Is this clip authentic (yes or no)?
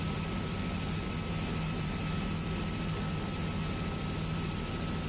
yes